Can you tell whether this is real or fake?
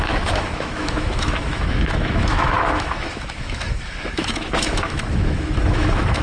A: fake